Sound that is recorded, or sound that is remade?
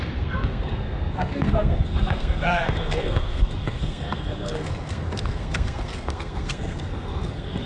remade